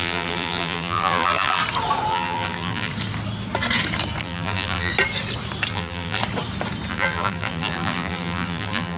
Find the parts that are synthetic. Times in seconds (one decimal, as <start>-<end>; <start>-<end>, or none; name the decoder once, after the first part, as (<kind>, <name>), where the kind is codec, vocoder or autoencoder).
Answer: 0.0-1.6 (vocoder, BigVGAN v2); 2.1-2.9; 4.2-4.9; 5.7-6.2; 6.9-9.0